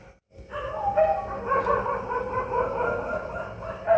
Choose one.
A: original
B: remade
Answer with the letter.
A